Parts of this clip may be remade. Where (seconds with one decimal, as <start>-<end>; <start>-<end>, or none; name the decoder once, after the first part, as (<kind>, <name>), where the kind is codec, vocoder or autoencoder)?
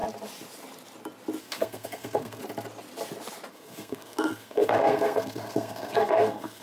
1.4-2.4 (codec, SNAC); 3.5-6.6